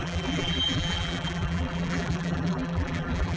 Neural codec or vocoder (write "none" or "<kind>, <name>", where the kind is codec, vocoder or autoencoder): vocoder, BigVGAN v2